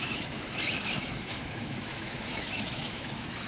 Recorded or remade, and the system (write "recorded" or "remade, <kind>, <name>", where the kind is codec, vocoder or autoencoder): remade, autoencoder, DAC-VAE